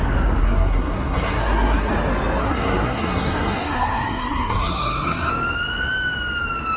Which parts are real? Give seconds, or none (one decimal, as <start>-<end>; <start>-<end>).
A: 0.0-0.4; 1.9-2.4; 5.3-6.8